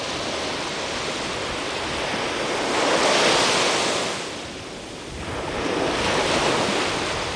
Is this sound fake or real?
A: real